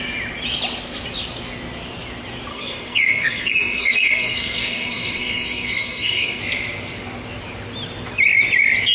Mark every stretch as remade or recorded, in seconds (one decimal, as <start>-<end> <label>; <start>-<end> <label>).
0.0-2.5 recorded; 2.5-6.4 remade; 6.4-8.9 recorded